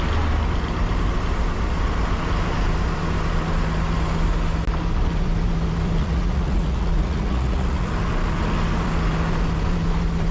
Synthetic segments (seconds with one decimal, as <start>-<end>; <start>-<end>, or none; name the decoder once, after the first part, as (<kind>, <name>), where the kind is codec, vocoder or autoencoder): 6.0-7.9 (vocoder, Vocos)